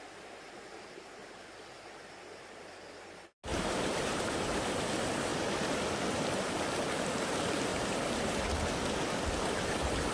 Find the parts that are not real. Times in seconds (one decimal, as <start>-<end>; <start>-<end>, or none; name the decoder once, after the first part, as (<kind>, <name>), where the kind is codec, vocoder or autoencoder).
3.5-4.8 (vocoder, BigVGAN v2); 7.7-8.2